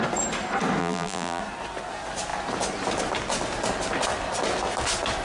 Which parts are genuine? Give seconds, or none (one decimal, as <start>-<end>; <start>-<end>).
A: 0.0-0.8; 1.4-5.2